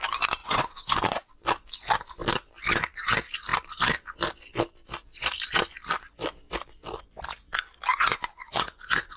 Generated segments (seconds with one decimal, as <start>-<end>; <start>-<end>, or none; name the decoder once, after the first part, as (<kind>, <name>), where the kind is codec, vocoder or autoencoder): 0.4-1.3 (vocoder, Vocos); 7.9-9.2